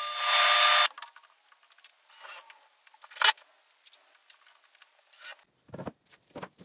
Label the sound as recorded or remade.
recorded